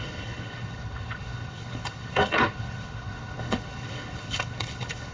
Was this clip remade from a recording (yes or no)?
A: yes